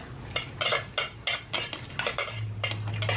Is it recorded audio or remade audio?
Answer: recorded